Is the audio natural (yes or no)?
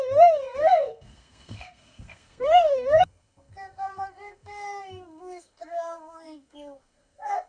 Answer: no